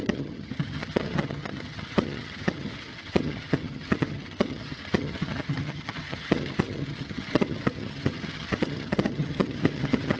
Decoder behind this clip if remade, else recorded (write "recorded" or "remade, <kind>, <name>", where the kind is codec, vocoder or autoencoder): remade, vocoder, HiFi-GAN